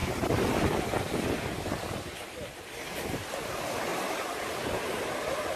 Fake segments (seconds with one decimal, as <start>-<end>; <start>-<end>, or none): none